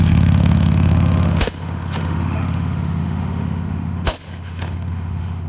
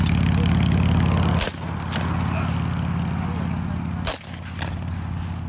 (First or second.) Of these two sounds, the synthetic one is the first